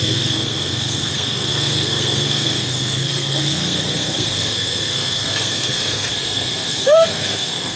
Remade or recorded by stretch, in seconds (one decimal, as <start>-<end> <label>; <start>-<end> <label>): 0.0-7.7 remade